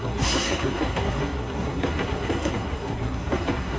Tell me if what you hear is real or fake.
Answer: fake